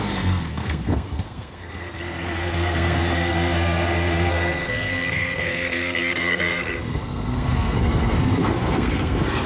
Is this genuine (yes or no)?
no